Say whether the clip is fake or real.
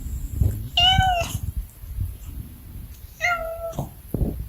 real